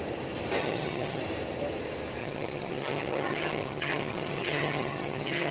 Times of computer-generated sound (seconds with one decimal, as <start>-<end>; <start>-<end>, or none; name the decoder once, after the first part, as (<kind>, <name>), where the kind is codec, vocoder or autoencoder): 0.6-1.2 (vocoder, HiFi-GAN); 2.2-5.5